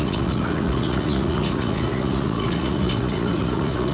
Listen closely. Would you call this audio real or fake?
fake